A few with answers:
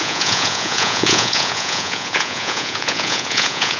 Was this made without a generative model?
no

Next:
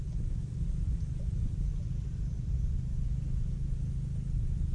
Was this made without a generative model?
yes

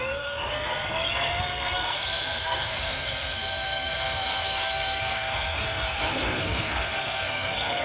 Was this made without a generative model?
no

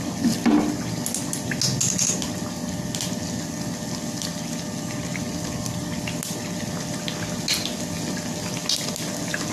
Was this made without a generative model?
yes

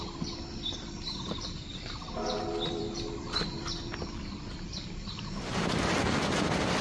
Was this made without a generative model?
no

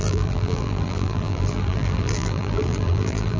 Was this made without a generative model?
no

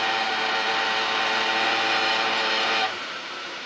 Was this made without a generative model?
no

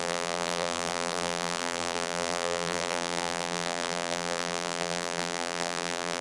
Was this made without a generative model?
no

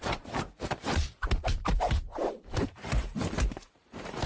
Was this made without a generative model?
no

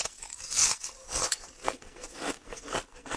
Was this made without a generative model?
no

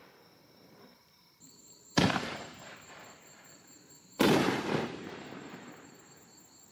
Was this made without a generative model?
no